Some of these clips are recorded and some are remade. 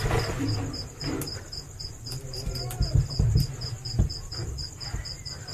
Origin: recorded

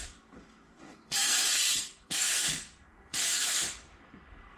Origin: remade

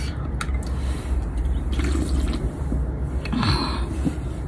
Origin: recorded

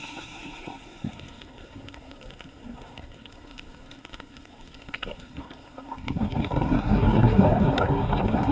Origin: remade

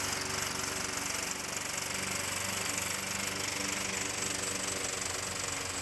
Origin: recorded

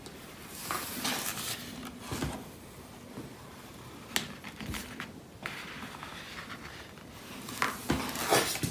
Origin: recorded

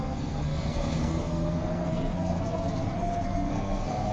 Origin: remade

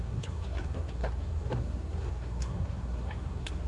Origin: remade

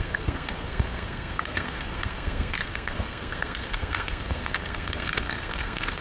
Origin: remade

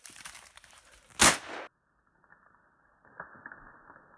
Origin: recorded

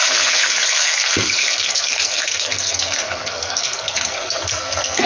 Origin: remade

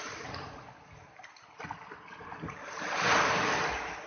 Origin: recorded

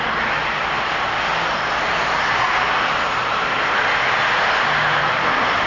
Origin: recorded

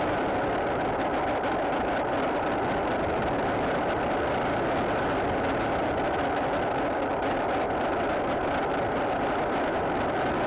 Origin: recorded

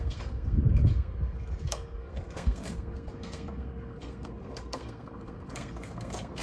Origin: remade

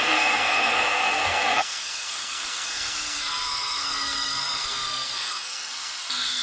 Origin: remade